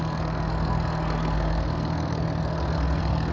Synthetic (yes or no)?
yes